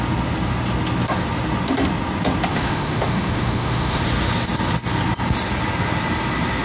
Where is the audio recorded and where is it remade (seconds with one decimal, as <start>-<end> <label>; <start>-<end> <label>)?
0.0-2.5 recorded; 2.5-4.0 remade; 4.0-6.6 recorded